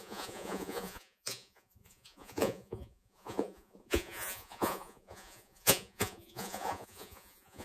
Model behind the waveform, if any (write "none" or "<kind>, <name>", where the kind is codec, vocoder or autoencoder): vocoder, Vocos